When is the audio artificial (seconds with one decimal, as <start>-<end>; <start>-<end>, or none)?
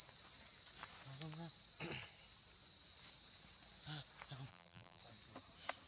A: 4.5-5.0